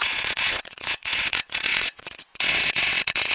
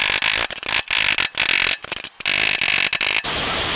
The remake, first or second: first